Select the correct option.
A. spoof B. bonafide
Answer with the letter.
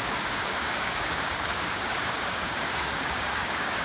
A